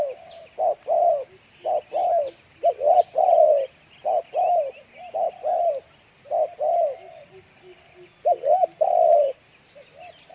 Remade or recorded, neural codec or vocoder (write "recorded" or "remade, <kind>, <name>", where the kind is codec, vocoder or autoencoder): recorded